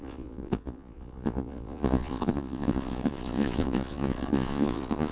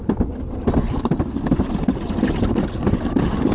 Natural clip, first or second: second